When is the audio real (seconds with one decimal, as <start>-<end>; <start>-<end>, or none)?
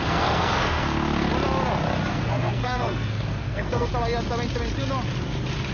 1.3-2.1; 3.9-5.7